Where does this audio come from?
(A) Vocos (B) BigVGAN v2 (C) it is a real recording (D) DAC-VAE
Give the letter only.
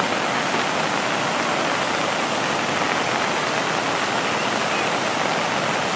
C